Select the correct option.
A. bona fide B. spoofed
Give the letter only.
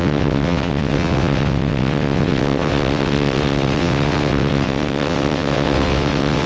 B